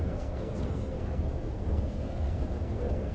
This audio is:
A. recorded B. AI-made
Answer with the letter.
B